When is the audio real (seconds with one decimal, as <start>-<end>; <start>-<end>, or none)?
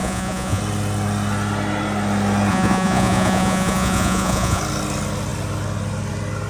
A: 0.6-2.5; 4.6-6.5